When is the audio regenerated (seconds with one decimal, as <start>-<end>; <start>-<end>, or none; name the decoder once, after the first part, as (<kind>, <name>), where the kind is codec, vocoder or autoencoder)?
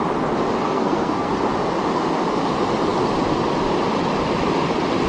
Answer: 0.6-1.3 (codec, SNAC)